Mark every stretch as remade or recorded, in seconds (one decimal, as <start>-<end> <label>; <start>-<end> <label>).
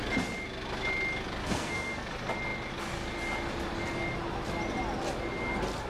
0.0-1.4 recorded; 1.4-2.1 remade; 2.1-5.9 recorded